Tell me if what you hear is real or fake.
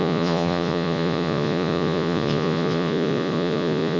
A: fake